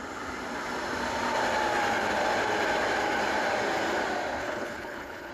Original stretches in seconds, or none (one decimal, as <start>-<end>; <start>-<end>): 0.0-4.4